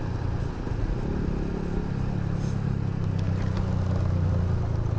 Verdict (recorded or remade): recorded